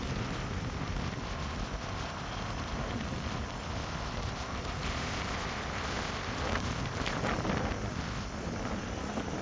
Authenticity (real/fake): real